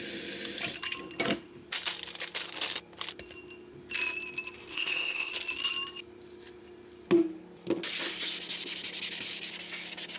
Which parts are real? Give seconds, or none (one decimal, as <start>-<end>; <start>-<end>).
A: 0.0-4.7; 5.3-10.2